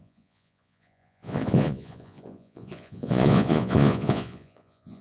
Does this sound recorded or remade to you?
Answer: remade